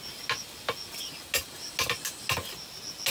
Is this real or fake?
real